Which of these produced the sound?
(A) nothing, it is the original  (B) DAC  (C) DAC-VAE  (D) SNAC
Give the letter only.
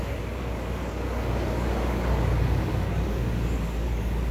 B